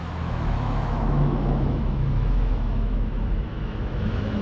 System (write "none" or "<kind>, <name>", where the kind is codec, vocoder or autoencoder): autoencoder, DAC-VAE